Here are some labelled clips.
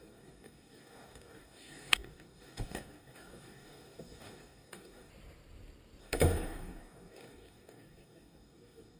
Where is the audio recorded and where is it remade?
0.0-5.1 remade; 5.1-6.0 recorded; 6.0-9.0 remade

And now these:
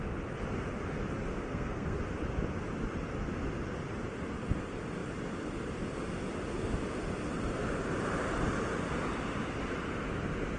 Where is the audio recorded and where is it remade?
0.0-1.4 recorded; 1.4-2.0 remade; 2.0-10.6 recorded

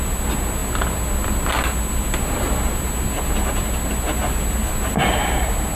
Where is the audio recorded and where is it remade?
0.0-5.8 recorded

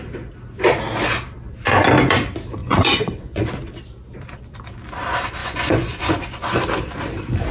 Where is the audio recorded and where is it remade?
0.0-2.6 recorded; 2.6-3.5 remade; 3.5-5.4 recorded; 5.4-6.1 remade; 6.1-7.5 recorded

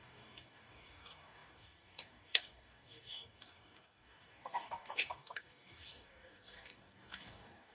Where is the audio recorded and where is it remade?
0.0-7.7 remade

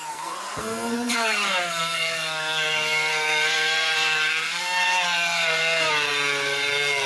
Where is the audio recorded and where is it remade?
0.0-7.1 remade